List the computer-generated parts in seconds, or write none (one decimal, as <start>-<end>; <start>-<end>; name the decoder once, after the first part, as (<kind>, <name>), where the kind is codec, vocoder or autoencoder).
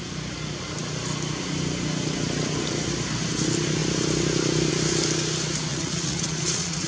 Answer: 5.7-6.9 (vocoder, Vocos)